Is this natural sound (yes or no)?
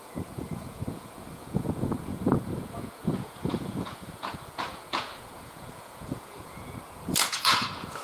no